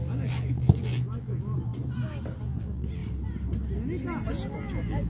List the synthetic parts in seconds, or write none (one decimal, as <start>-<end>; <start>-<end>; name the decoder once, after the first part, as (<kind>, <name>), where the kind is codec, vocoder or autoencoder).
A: 0.0-1.7 (vocoder, BigVGAN v2); 2.4-3.0; 4.3-5.1